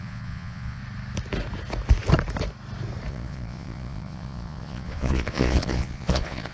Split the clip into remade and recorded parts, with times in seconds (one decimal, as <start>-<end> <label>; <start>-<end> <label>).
0.0-0.8 remade; 0.8-3.1 recorded; 3.1-6.5 remade